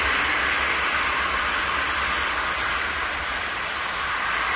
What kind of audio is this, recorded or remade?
recorded